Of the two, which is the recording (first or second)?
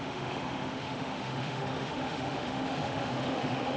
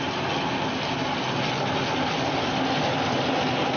second